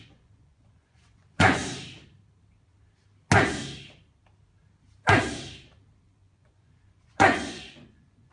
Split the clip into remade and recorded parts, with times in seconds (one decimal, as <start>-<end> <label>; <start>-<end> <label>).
0.0-1.6 remade; 1.6-6.0 recorded; 6.0-8.3 remade